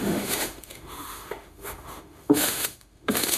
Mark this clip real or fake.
fake